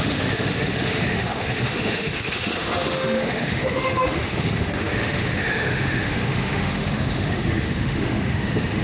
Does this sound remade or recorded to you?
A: remade